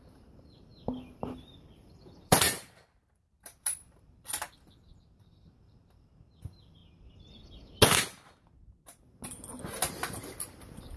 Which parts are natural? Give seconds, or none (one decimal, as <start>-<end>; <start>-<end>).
6.8-9.6